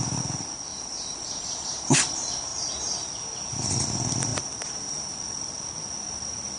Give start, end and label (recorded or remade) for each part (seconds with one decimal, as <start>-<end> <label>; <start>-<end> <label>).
0.0-0.7 recorded; 0.7-2.0 remade; 2.0-2.5 recorded; 2.5-3.1 remade; 3.1-4.3 recorded; 4.3-5.2 remade; 5.2-6.6 recorded